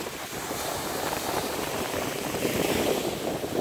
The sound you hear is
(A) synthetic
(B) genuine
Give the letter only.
A